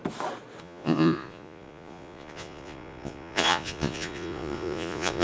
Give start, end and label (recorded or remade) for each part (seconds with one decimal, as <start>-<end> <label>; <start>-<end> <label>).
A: 0.0-0.6 recorded; 0.6-5.2 remade